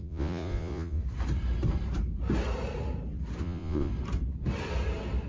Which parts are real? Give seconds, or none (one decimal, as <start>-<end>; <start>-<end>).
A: 1.0-3.4; 3.9-5.3